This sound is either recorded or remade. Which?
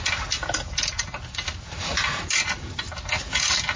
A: recorded